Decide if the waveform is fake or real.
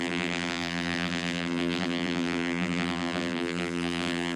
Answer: fake